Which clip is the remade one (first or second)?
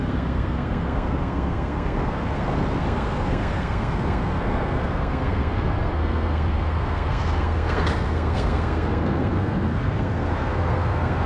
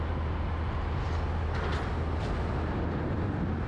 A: first